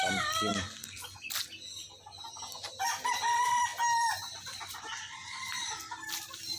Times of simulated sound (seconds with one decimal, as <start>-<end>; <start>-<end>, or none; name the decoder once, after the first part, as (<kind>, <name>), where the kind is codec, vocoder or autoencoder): 0.0-0.5 (vocoder, BigVGAN v2); 2.7-6.6